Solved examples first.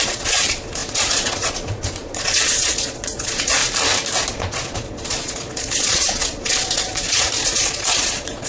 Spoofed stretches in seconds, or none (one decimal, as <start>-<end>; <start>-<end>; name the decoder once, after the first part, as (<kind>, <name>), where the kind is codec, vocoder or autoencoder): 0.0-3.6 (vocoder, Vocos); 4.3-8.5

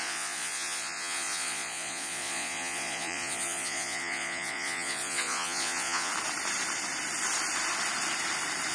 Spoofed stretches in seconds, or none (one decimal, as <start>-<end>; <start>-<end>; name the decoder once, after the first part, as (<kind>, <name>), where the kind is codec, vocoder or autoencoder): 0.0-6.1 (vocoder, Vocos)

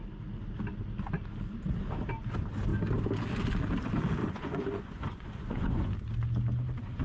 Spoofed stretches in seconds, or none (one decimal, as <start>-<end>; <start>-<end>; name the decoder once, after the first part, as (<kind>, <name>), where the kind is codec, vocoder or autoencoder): 4.2-5.9 (vocoder, Vocos)